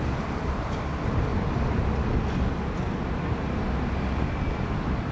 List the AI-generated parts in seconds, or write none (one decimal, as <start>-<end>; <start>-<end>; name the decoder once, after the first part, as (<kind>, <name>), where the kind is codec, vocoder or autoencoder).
none